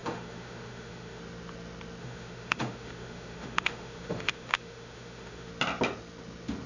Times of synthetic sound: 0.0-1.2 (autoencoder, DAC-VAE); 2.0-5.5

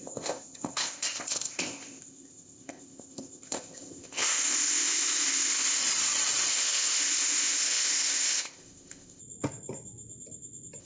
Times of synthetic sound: 0.0-5.8 (codec, ZipCodec); 6.5-9.2

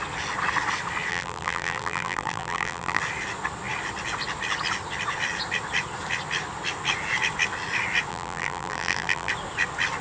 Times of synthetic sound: 1.1-3.0 (vocoder, BigVGAN v2); 8.1-9.3

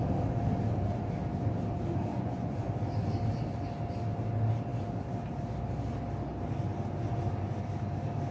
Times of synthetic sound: 2.1-2.7 (vocoder, Vocos)

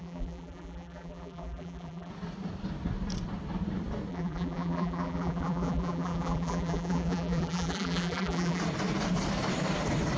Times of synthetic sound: 0.0-2.1 (vocoder, BigVGAN v2); 4.1-8.6

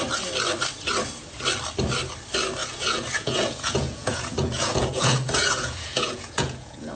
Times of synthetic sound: 2.6-6.9 (vocoder, Vocos)

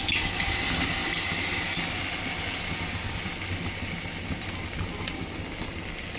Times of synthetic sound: none